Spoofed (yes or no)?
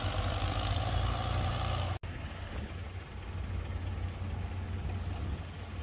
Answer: no